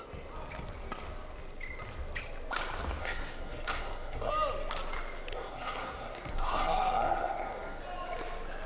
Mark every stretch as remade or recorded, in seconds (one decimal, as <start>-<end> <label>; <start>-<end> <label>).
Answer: 0.0-3.0 recorded; 3.0-4.3 remade; 4.3-5.3 recorded; 5.3-7.8 remade; 7.8-8.7 recorded